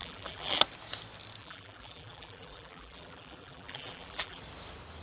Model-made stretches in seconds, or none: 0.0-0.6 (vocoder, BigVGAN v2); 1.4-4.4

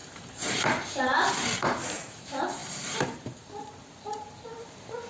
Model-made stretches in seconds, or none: 0.0-5.1 (vocoder, BigVGAN v2)

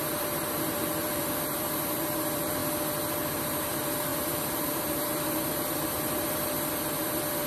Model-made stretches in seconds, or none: 0.0-2.6 (vocoder, BigVGAN v2); 3.3-7.5

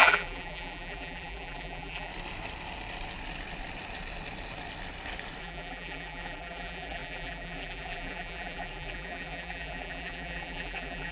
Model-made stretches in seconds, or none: 0.0-2.1 (vocoder, BigVGAN v2); 5.4-11.1

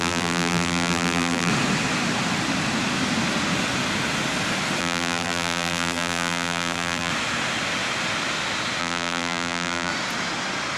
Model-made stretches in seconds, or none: 0.0-1.5 (vocoder, BigVGAN v2); 4.8-7.1; 8.8-9.9

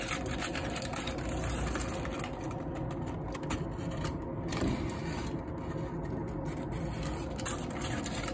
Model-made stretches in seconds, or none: none

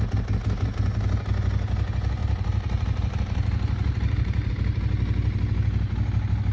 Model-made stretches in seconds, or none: 2.2-4.5 (vocoder, BigVGAN v2)